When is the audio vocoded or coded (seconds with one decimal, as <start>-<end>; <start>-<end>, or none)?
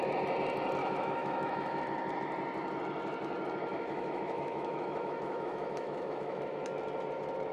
0.8-1.8; 3.7-6.4